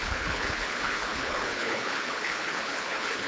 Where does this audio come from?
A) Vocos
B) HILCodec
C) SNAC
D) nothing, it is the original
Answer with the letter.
B